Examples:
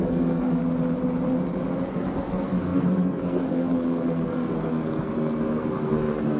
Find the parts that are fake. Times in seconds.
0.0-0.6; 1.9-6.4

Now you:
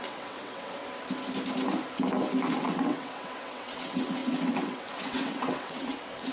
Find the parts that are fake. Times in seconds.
0.0-0.8; 2.5-6.3

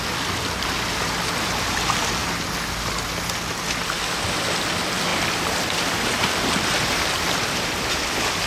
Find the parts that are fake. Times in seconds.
none

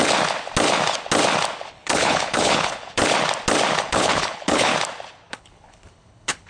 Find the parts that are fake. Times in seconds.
1.7-3.0; 3.8-4.7; 5.3-6.5

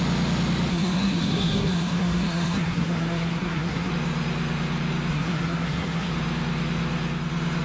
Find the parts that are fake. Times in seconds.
0.7-3.9; 5.1-6.1

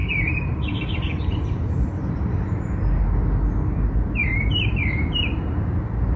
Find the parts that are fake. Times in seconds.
0.0-2.5; 4.2-5.7